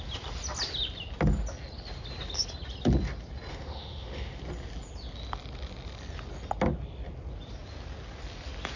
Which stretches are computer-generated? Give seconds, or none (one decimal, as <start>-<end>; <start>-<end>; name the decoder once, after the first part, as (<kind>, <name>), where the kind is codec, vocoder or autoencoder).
3.5-4.4 (autoencoder, DAC-VAE)